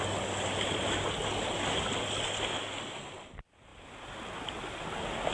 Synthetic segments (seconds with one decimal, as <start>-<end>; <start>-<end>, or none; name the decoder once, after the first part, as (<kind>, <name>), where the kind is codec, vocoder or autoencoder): none